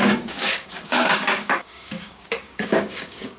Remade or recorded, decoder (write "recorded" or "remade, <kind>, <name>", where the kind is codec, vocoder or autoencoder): remade, codec, DAC